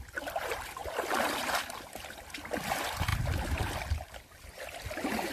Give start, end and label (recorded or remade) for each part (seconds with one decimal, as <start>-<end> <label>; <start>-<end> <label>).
0.0-5.3 remade